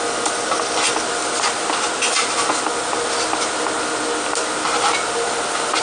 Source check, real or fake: real